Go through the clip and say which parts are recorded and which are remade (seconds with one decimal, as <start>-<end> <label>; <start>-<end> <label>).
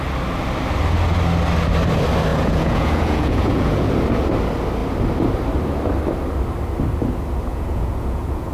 0.0-2.3 recorded; 2.3-3.9 remade; 3.9-7.5 recorded; 7.5-8.5 remade